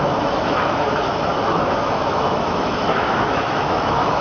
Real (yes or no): no